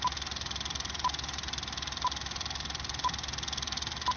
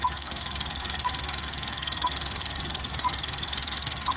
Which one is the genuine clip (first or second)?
first